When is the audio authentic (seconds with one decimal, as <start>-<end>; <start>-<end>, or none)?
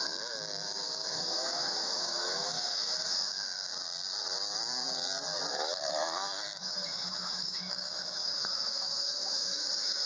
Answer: 3.7-5.5